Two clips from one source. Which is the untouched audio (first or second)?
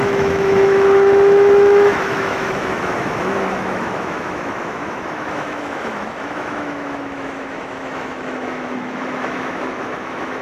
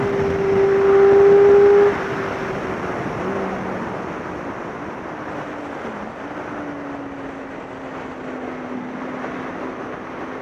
second